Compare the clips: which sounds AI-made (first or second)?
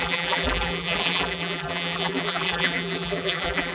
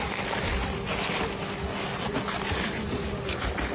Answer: first